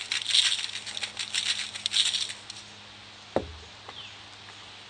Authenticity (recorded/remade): recorded